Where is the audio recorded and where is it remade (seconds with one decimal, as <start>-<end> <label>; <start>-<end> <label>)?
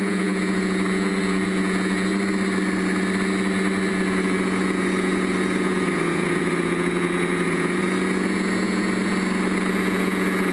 0.0-2.1 remade; 2.1-3.9 recorded; 3.9-10.5 remade